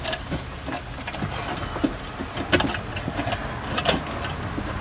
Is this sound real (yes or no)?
yes